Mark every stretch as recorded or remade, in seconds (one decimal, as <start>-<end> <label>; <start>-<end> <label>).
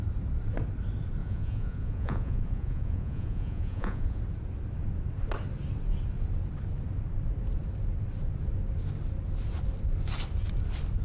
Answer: 0.0-1.2 recorded; 1.2-4.2 remade; 4.2-11.0 recorded